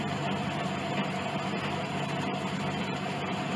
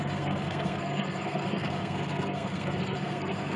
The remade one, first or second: second